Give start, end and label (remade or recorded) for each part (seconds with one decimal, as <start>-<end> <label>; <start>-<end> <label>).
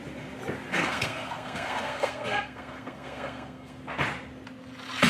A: 0.0-0.7 recorded; 0.7-3.8 remade; 3.8-5.1 recorded